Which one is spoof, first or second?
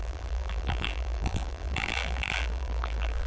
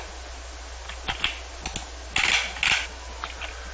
first